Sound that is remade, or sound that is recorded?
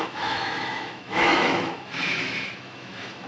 remade